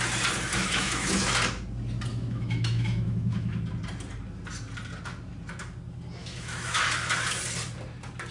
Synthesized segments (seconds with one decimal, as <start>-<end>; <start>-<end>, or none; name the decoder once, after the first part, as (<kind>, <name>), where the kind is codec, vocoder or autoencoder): 0.5-1.3 (autoencoder, DAC-VAE); 2.1-3.6; 6.2-6.8